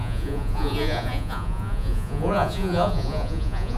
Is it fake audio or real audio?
fake